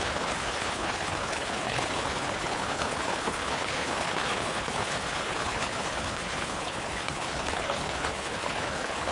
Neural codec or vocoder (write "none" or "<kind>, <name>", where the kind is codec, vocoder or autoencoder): codec, HILCodec